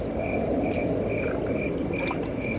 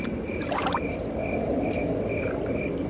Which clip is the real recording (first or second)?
second